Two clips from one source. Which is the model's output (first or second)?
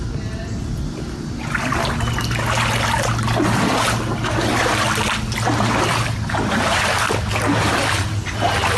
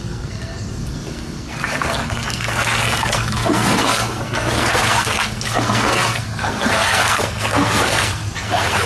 second